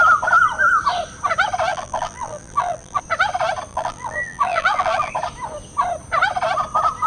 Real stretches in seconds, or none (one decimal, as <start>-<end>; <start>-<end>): 0.0-1.7; 3.0-3.7; 5.1-7.1